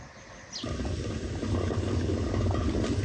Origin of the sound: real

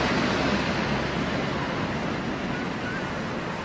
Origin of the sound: real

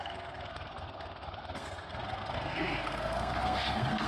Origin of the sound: fake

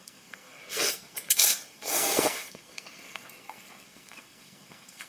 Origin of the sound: fake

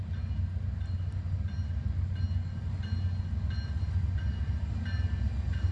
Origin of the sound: real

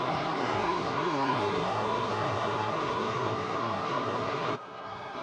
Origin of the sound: fake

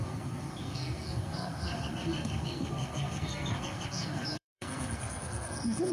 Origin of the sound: fake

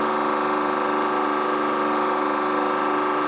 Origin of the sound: real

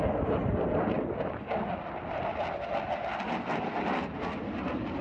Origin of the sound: real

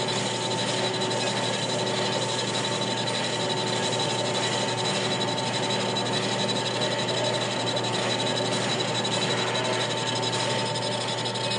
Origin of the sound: real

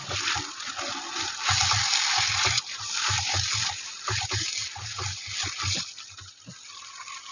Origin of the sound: real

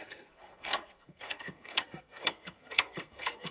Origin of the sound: fake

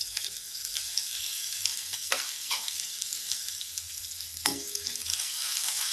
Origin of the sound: fake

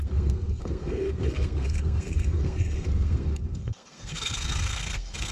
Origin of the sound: fake